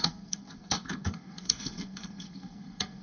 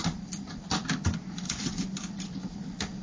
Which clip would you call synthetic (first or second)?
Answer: first